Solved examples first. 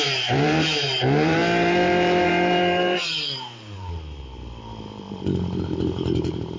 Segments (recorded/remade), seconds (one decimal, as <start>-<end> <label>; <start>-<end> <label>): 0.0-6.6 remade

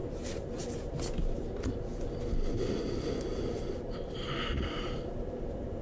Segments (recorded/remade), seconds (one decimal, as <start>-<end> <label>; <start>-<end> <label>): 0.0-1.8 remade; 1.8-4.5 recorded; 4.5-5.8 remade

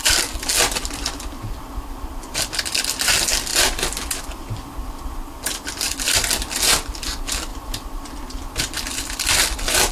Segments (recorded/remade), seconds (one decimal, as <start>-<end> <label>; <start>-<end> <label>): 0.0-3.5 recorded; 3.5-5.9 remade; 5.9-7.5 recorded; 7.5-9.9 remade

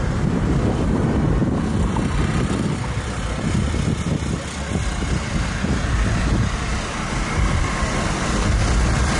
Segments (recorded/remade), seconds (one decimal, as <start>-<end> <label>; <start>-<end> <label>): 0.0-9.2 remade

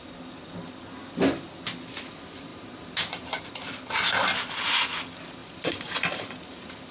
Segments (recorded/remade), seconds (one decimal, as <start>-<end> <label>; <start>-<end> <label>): 0.0-2.5 recorded; 2.5-3.4 remade; 3.4-5.4 recorded; 5.4-6.9 remade

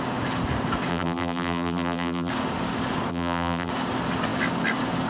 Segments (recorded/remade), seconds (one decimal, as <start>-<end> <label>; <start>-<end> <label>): 0.0-0.9 recorded; 0.9-2.3 remade; 2.3-3.1 recorded; 3.1-3.7 remade; 3.7-5.1 recorded

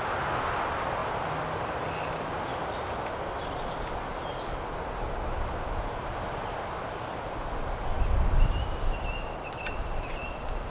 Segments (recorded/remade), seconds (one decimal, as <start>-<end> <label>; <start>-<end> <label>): 0.0-1.0 remade; 1.0-6.2 recorded; 6.2-10.7 remade

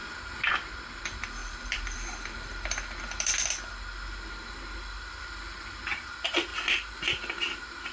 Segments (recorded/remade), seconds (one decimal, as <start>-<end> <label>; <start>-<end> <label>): 0.0-1.4 recorded; 1.4-3.0 remade; 3.0-6.5 recorded; 6.5-7.4 remade; 7.4-7.9 recorded